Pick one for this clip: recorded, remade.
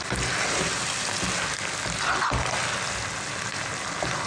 recorded